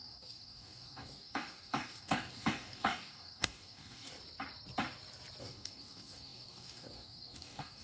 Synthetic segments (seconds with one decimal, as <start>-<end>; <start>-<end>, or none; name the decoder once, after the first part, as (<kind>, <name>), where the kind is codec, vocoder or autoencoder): 0.0-4.1 (codec, DAC); 5.4-7.8

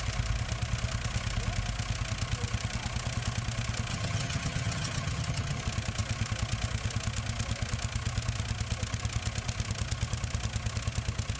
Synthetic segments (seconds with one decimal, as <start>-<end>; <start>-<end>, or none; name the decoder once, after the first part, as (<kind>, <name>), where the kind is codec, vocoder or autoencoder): 3.9-5.6 (vocoder, HiFi-GAN)

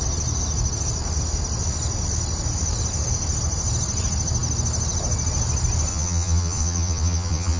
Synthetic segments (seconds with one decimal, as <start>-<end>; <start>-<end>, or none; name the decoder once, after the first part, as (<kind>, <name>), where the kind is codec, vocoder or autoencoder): 5.9-7.6 (vocoder, Vocos)

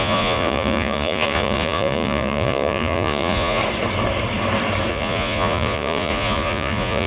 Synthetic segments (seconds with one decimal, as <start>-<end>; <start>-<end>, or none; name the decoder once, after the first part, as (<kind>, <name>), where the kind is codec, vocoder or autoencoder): 0.0-3.6 (vocoder, Vocos); 4.9-7.1

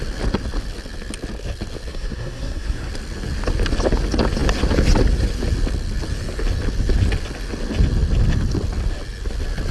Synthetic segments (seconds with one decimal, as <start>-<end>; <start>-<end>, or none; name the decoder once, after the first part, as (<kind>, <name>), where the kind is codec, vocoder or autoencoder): 1.9-2.9 (codec, SNAC)

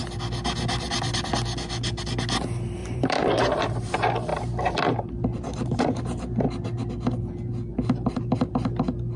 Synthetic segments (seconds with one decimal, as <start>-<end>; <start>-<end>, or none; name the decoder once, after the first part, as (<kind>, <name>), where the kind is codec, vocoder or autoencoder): 2.8-3.9 (vocoder, BigVGAN v2); 4.3-6.3; 7.7-8.5